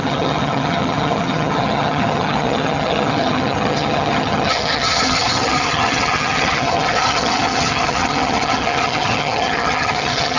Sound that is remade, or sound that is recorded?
remade